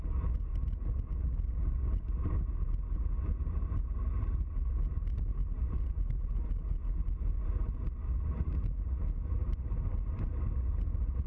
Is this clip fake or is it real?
real